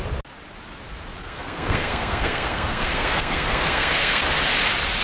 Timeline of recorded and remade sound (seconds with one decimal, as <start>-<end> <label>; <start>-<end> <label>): 0.0-1.2 recorded; 1.2-4.2 remade; 4.2-5.0 recorded